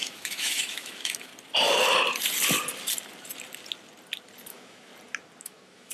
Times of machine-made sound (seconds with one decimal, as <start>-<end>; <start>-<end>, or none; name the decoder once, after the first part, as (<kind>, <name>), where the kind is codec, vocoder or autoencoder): 0.0-1.3 (autoencoder, DAC-VAE); 4.5-4.9; 5.4-5.9